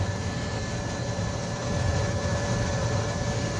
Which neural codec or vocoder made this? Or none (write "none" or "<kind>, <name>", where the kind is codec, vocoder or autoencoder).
none